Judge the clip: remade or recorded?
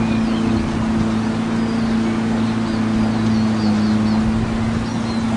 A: recorded